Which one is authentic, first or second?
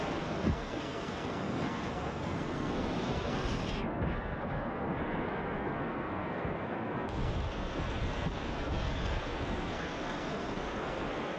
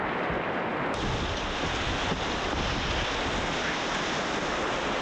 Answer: second